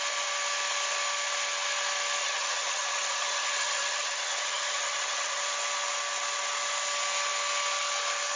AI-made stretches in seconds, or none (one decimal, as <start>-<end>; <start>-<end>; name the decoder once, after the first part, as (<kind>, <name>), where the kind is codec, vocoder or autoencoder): 2.2-5.4 (vocoder, HiFi-GAN)